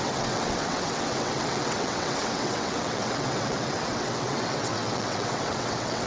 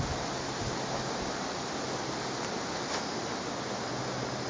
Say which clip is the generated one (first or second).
first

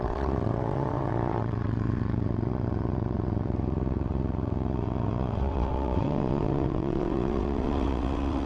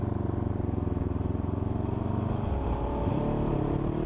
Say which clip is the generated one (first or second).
first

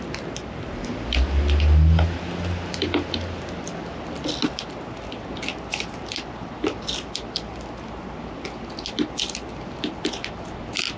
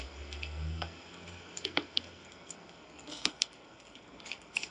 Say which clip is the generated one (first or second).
second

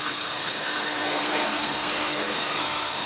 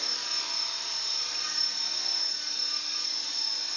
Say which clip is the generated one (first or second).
first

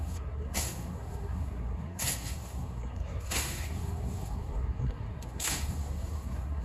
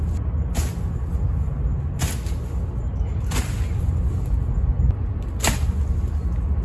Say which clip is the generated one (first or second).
first